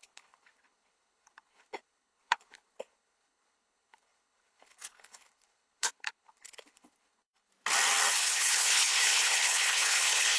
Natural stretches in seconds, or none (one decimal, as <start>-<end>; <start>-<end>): 7.5-8.1